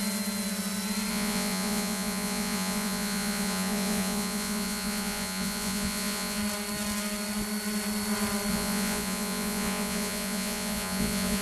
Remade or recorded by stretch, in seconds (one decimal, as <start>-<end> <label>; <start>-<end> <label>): 0.0-1.1 recorded; 1.1-6.4 remade; 6.4-8.5 recorded; 8.5-11.4 remade